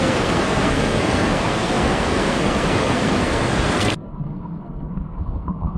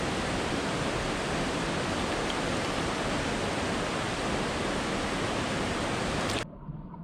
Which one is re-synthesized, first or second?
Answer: first